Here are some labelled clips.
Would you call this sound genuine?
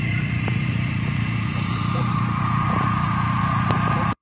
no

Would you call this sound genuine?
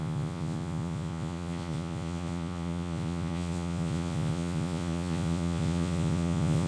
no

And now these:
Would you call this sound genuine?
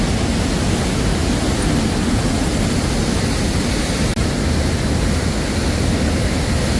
yes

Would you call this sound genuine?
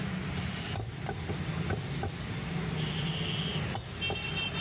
yes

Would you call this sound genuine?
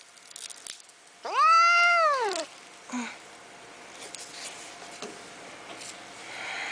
yes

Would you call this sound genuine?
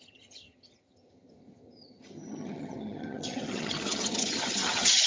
no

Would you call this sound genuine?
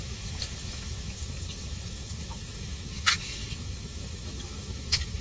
no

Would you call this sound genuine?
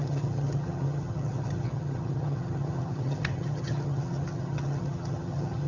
no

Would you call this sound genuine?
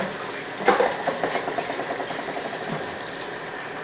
yes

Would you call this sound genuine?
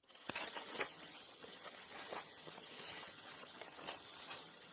no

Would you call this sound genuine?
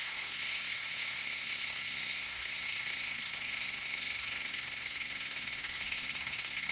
no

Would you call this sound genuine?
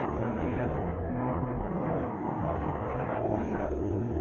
no